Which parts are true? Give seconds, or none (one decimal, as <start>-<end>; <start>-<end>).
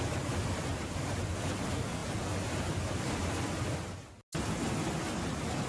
0.0-5.7